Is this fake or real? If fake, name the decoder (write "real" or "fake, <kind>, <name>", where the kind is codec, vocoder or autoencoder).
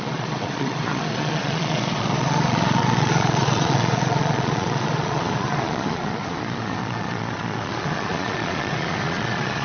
fake, vocoder, Vocos